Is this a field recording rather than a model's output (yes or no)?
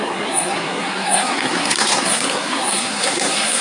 no